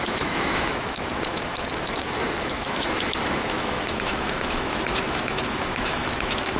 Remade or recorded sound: remade